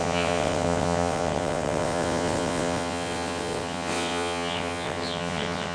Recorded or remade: remade